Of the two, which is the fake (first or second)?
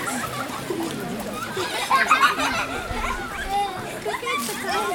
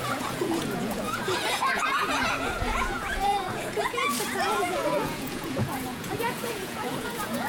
second